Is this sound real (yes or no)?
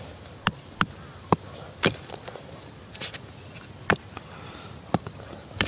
yes